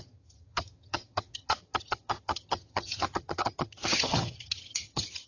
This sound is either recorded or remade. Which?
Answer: remade